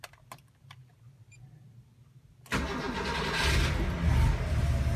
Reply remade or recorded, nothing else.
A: recorded